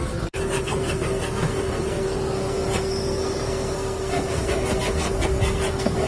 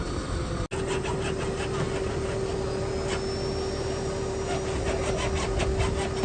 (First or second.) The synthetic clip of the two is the first